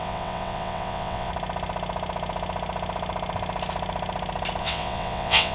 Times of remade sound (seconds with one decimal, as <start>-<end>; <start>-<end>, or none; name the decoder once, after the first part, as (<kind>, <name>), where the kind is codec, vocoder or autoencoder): 0.0-1.3 (vocoder, WaveNeXt); 4.6-5.5